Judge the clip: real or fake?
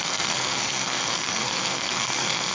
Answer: fake